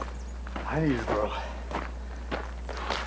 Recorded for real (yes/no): yes